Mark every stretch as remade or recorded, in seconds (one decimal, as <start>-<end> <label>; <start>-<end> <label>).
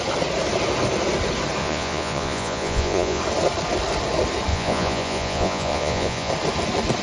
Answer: 0.0-1.6 recorded; 1.6-3.2 remade; 3.2-4.5 recorded; 4.5-6.3 remade; 6.3-7.0 recorded